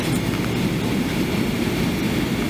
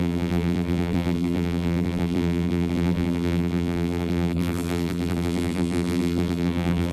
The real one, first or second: first